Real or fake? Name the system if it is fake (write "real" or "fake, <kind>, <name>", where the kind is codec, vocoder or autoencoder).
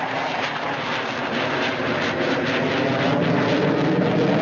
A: real